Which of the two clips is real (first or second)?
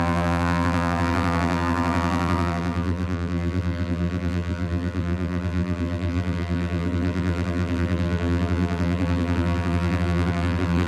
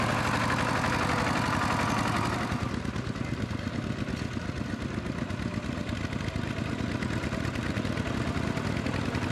second